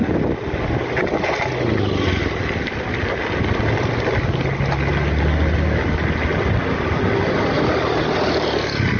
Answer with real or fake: real